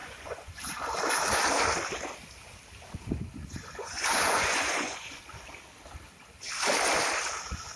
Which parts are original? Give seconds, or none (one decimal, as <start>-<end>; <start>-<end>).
0.6-3.4; 5.2-7.8